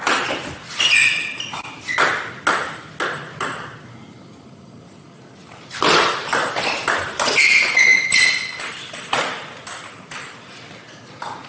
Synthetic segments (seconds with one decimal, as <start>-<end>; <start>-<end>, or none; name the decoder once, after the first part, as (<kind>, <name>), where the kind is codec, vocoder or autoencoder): none

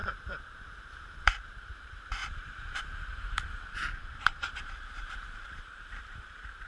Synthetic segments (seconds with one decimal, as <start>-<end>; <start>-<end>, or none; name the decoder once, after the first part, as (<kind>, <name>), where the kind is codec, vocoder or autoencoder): 0.0-6.7 (vocoder, BigVGAN v2)

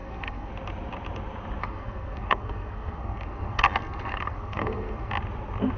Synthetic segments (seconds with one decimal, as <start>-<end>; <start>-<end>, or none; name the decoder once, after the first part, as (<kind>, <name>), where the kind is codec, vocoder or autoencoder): 0.0-0.5 (codec, SNAC); 1.6-5.1